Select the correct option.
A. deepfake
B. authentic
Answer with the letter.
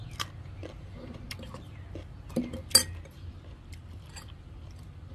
B